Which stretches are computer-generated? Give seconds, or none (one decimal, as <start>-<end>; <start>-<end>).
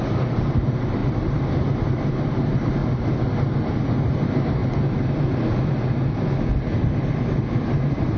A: 0.0-1.0; 1.8-2.8; 3.7-4.6; 7.1-8.2